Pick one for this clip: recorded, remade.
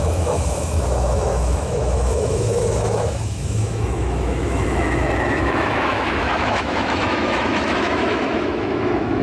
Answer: remade